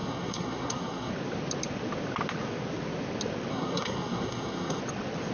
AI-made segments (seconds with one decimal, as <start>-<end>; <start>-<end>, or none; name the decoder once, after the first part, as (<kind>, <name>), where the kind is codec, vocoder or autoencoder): 0.0-1.1 (codec, SNAC); 3.5-4.8